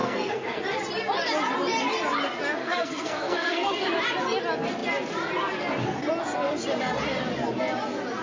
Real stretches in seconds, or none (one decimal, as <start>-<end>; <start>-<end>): 0.6-2.6; 3.7-8.2